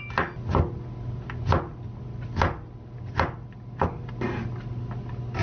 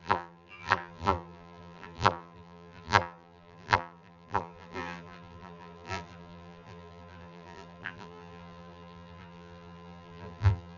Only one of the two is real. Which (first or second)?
first